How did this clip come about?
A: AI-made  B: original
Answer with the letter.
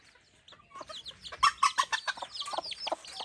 B